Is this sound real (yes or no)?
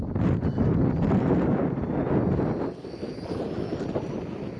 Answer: yes